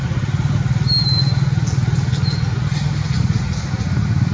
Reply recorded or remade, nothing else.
recorded